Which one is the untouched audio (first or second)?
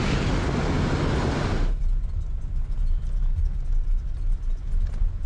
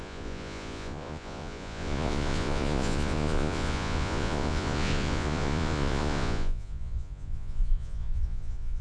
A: first